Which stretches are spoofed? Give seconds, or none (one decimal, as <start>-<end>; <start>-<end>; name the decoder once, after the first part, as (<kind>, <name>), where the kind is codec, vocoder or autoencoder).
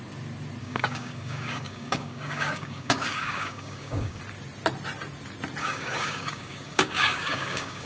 0.6-4.2 (codec, DAC); 5.6-7.9